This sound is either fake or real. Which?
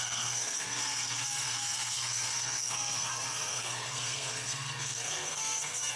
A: fake